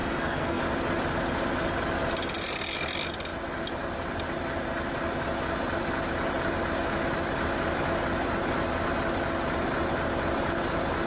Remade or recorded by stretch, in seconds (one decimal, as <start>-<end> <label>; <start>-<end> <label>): 0.0-0.6 remade; 0.6-11.1 recorded